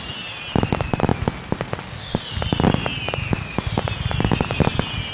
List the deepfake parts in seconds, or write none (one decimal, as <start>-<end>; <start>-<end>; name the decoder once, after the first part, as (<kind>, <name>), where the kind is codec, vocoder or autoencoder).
none